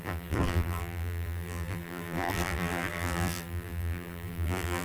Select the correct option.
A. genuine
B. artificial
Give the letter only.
B